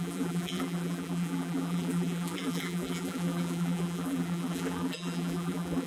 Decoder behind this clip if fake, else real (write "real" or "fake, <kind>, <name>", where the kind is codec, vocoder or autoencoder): fake, vocoder, BigVGAN v2